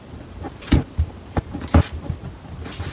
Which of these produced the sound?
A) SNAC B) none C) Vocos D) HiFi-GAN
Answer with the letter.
B